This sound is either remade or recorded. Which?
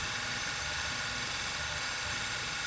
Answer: recorded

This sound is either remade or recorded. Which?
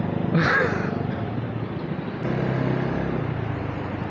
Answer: recorded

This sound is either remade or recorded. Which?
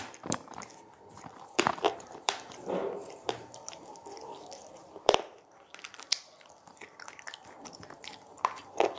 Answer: remade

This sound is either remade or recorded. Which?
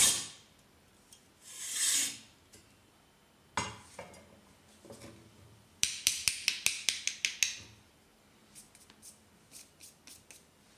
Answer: recorded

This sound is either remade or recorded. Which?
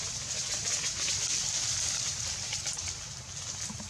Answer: recorded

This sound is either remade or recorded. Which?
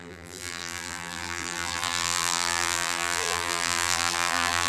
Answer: remade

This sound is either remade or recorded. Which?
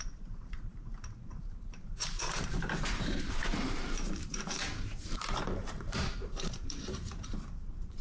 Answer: remade